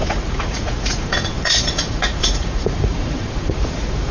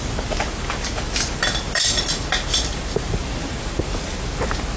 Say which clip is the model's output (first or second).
first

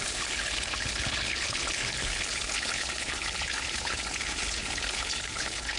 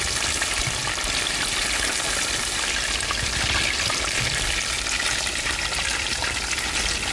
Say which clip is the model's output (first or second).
first